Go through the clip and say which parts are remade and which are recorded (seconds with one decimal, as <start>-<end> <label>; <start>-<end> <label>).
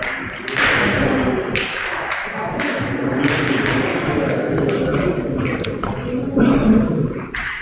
0.0-1.7 recorded; 1.7-2.9 remade; 2.9-3.9 recorded; 3.9-4.5 remade; 4.5-7.6 recorded